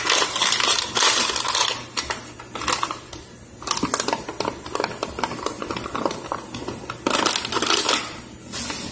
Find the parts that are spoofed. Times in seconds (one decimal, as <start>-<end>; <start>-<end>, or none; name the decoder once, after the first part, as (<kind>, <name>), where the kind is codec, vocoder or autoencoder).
none